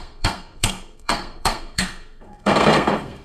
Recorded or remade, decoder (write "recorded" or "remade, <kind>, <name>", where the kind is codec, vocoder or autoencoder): remade, codec, SNAC